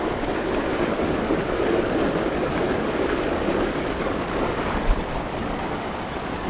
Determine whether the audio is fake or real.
fake